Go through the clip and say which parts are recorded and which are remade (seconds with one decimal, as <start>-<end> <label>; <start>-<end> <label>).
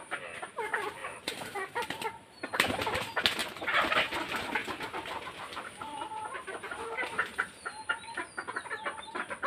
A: 0.0-1.0 recorded; 1.0-2.7 remade; 2.7-3.4 recorded; 3.4-4.0 remade; 4.0-4.6 recorded; 4.6-5.3 remade; 5.3-9.5 recorded